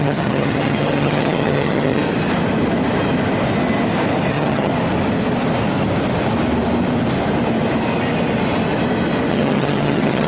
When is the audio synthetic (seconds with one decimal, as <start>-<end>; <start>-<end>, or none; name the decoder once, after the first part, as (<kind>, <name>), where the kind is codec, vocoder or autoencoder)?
0.0-2.0 (vocoder, HiFi-GAN); 4.3-4.7; 9.3-10.3